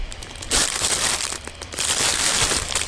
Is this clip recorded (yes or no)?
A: no